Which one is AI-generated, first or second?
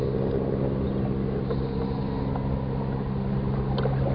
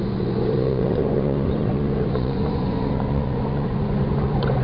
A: second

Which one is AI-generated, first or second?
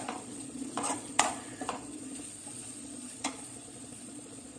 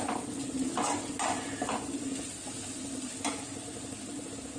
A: first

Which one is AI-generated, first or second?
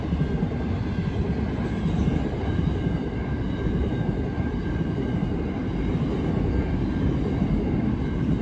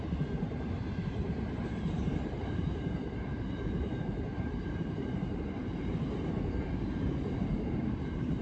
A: second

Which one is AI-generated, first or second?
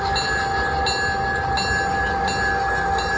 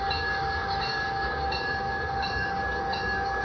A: second